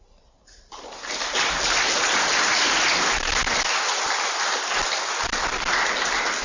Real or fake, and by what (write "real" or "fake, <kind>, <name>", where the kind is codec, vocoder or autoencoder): real